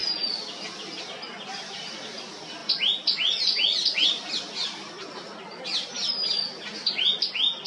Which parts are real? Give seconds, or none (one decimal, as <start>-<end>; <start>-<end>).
0.0-7.7